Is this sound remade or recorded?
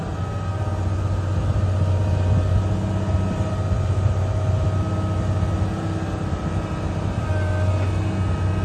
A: recorded